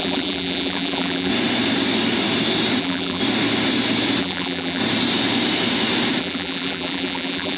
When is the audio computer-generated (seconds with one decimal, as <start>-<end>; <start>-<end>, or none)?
0.0-1.3; 2.8-3.2; 4.2-4.8; 6.2-7.6